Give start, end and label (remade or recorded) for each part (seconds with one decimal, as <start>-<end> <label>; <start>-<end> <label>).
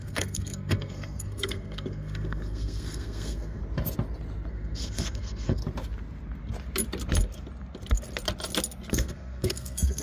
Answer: 0.0-3.6 remade; 3.6-4.5 recorded; 4.5-5.6 remade; 5.6-8.9 recorded; 8.9-10.0 remade